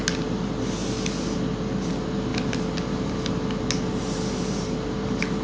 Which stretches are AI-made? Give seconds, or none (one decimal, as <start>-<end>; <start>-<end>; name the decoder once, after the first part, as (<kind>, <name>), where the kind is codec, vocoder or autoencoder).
none